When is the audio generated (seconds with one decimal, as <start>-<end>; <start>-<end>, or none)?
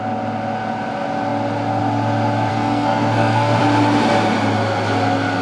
2.5-3.6